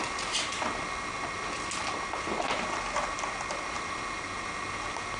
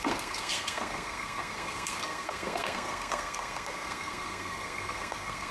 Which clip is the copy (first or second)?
second